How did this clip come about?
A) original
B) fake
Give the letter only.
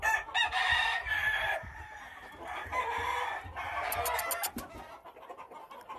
A